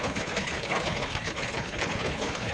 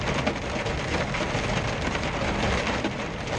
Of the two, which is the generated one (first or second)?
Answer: first